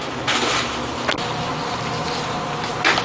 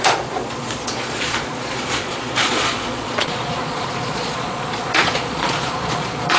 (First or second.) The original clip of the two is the first